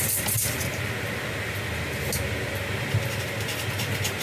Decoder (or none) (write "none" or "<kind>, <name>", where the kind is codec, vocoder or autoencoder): none